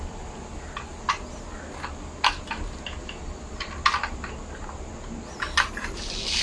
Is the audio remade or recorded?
recorded